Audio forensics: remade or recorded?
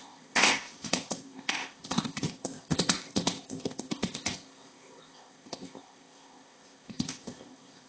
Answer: remade